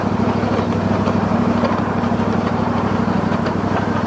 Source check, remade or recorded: remade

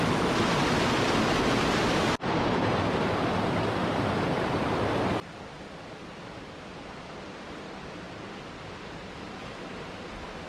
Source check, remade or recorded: recorded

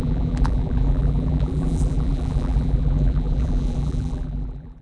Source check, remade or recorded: remade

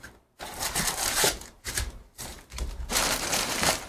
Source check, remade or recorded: remade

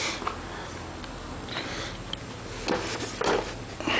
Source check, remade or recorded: recorded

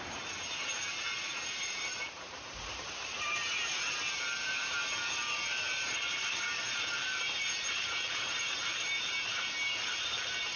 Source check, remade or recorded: remade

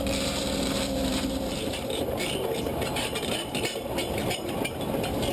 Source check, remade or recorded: remade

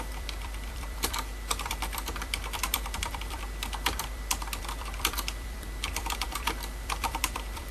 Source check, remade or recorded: remade